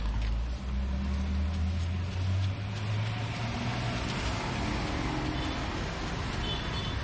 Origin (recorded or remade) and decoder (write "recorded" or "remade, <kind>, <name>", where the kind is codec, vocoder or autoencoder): recorded